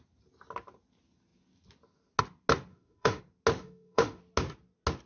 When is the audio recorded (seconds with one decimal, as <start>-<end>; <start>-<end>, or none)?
0.0-2.7; 3.2-3.6; 4.2-5.1